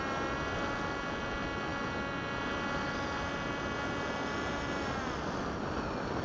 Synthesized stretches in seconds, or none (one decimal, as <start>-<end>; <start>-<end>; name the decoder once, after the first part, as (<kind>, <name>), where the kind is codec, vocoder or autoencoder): none